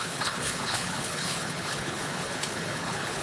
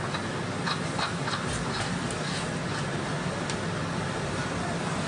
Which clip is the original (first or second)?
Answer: second